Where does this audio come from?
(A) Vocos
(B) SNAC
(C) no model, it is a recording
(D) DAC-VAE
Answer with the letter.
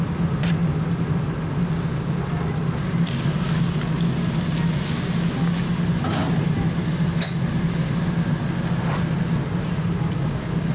C